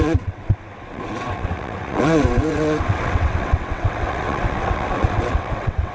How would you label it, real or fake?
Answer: fake